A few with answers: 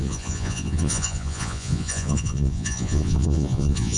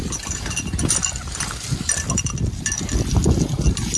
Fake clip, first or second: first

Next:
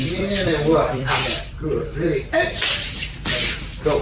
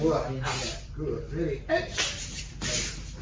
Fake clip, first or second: first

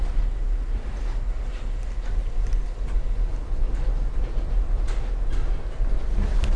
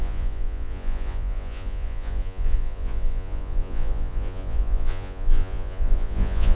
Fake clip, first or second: second